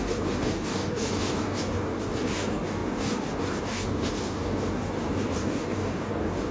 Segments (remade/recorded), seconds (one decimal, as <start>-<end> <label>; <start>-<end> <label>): 0.0-6.5 remade